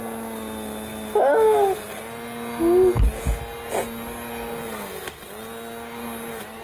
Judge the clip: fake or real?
real